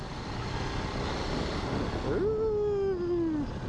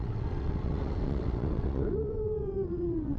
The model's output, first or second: second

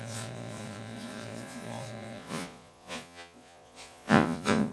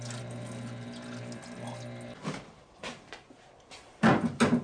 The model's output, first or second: first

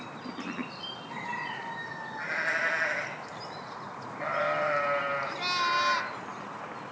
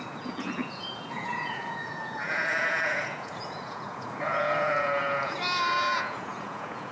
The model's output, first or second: second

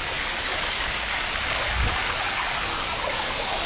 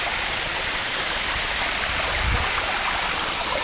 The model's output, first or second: first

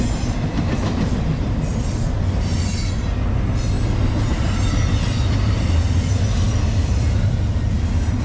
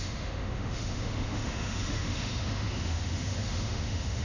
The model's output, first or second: second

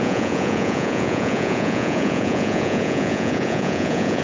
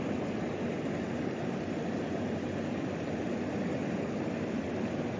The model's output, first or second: first